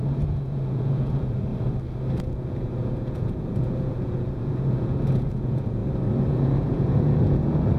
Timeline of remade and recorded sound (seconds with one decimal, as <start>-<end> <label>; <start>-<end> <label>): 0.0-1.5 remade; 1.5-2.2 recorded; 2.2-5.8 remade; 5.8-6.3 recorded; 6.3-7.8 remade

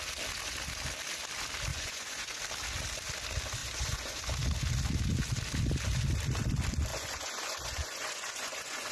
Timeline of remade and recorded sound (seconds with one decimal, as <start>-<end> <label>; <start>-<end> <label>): 0.0-1.7 recorded; 1.7-2.4 remade; 2.4-3.6 recorded; 3.6-4.2 remade; 4.2-6.9 recorded; 6.9-8.9 remade

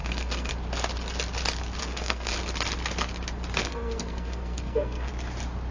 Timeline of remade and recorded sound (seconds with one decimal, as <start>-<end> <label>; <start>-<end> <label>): 0.0-0.5 remade; 0.5-1.8 recorded; 1.8-2.3 remade; 2.3-3.6 recorded; 3.6-5.1 remade; 5.1-5.7 recorded

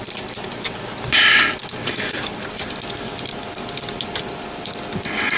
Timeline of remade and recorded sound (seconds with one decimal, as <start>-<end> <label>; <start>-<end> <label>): 0.0-5.4 recorded

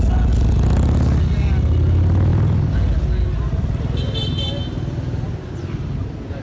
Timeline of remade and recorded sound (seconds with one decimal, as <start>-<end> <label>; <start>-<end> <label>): 0.0-6.4 recorded

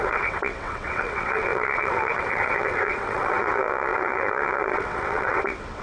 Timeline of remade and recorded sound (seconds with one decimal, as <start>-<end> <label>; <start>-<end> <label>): 0.0-5.8 remade